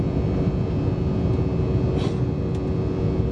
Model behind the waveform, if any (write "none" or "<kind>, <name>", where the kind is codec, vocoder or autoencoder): none